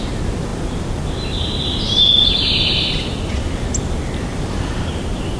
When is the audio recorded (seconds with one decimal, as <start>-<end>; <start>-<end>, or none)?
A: 0.0-5.4

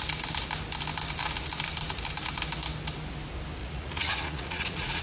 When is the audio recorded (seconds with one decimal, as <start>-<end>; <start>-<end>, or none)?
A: 0.0-3.6

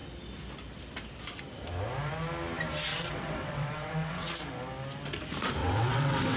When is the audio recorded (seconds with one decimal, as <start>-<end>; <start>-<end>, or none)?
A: 0.0-2.9; 4.3-5.6

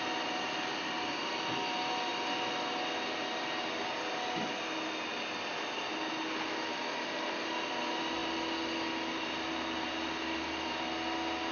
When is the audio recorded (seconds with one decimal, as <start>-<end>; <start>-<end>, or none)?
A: 0.0-11.5